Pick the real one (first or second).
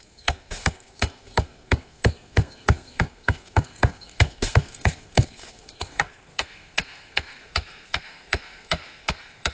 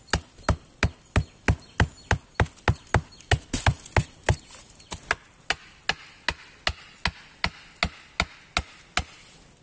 second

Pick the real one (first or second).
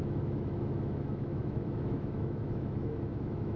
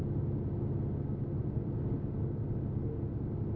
second